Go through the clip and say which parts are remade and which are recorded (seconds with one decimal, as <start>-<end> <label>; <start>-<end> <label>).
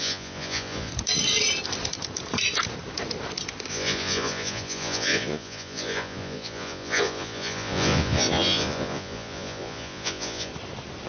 0.0-0.9 remade; 0.9-3.7 recorded; 3.7-10.5 remade; 10.5-11.1 recorded